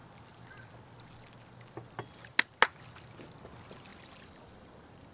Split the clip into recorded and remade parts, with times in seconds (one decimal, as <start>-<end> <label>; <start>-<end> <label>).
0.0-3.9 recorded; 3.9-5.1 remade